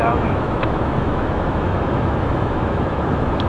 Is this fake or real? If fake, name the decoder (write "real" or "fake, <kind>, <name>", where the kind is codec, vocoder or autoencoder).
fake, autoencoder, DAC-VAE